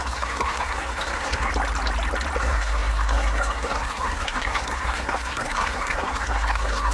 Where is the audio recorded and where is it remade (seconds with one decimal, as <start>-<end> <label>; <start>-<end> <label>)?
0.0-1.5 remade; 1.5-2.4 recorded; 2.4-6.9 remade